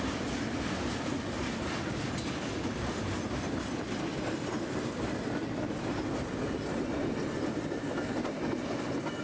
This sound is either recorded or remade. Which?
recorded